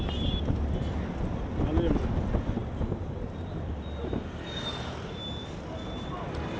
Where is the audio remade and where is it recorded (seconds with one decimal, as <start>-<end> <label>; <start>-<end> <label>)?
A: 0.0-6.6 recorded